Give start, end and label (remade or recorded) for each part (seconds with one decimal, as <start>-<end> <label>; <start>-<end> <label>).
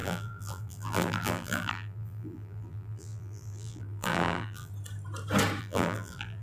0.0-4.7 remade; 4.7-5.6 recorded; 5.6-6.4 remade